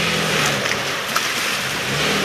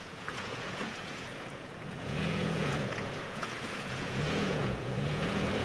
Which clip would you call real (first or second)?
first